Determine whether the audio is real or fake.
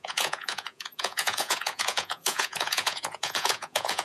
fake